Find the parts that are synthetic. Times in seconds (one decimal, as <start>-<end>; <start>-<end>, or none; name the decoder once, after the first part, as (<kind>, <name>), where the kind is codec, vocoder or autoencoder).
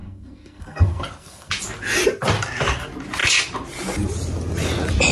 0.0-1.5 (codec, SNAC)